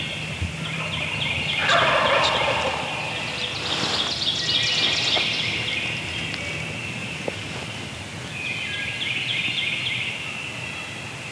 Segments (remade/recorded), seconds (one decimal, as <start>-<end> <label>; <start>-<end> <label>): 0.0-11.3 recorded